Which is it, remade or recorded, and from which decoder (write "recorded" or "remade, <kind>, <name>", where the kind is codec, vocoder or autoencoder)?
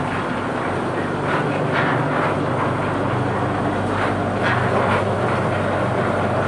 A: recorded